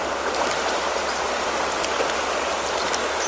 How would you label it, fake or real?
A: real